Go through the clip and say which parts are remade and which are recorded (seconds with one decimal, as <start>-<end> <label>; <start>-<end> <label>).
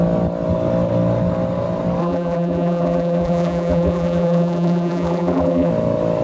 0.0-2.0 recorded; 2.0-5.7 remade; 5.7-6.2 recorded